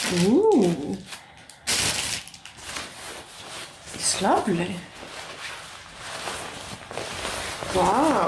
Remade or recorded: recorded